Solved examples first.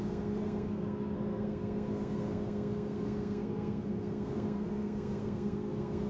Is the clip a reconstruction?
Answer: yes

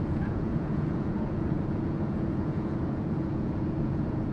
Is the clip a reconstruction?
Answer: yes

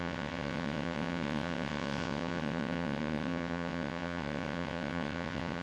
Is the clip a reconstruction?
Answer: yes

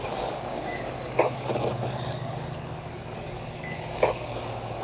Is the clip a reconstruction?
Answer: yes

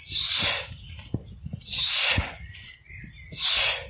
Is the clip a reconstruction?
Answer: no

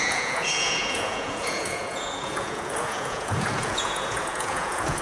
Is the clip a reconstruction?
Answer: yes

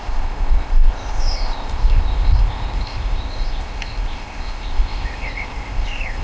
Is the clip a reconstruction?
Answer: yes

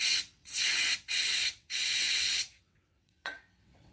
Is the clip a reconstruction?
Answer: yes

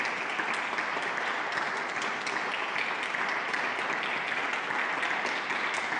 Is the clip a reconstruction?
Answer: no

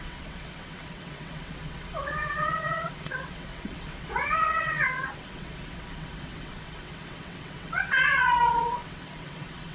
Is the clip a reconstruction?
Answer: yes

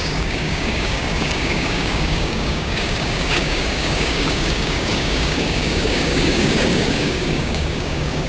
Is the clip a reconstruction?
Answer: yes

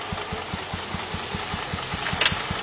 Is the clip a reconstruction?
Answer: no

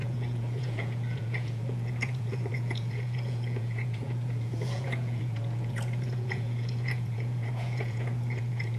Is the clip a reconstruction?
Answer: yes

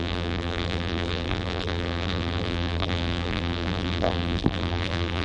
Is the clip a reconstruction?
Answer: yes